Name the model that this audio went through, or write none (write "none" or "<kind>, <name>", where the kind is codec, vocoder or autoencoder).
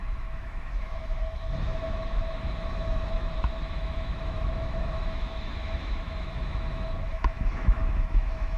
autoencoder, DAC-VAE